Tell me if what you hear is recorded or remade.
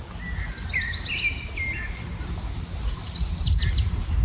recorded